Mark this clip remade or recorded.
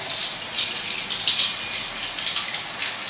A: recorded